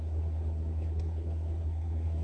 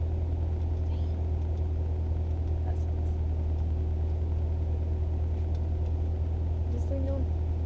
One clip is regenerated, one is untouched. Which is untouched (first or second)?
second